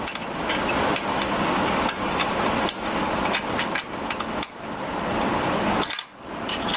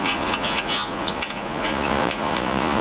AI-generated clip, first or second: second